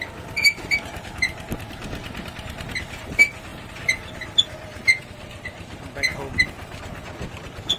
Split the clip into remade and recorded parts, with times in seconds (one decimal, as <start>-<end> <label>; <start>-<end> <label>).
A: 0.0-7.8 recorded